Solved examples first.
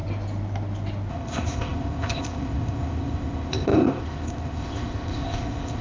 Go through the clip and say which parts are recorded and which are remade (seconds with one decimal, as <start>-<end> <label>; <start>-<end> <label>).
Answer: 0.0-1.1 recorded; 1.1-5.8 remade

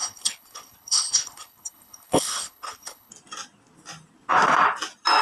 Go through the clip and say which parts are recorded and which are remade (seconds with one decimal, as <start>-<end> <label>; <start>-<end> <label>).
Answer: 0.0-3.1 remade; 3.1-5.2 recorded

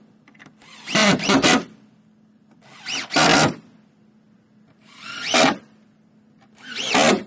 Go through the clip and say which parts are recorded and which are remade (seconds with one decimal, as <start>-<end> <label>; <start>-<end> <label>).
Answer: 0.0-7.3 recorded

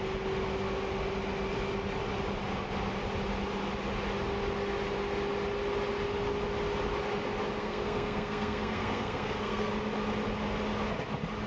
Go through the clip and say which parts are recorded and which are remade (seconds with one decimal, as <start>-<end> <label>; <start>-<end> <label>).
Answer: 0.0-7.6 recorded; 7.6-9.7 remade; 9.7-11.5 recorded

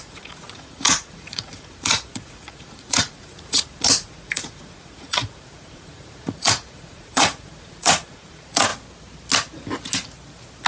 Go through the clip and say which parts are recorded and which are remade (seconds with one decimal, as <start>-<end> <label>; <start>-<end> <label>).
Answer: 0.0-8.7 remade; 8.7-10.7 recorded

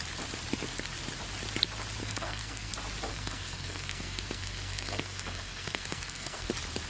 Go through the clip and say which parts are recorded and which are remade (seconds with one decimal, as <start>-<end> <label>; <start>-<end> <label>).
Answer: 0.0-2.0 recorded; 2.0-2.7 remade; 2.7-3.1 recorded; 3.1-6.5 remade; 6.5-6.9 recorded